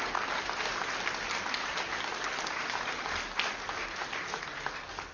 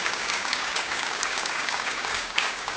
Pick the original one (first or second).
first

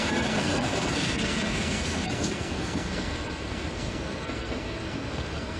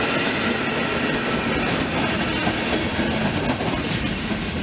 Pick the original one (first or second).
second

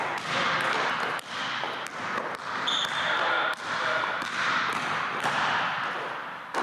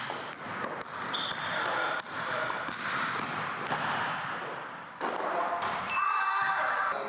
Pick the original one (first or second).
first